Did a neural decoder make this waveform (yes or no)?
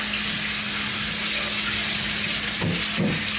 no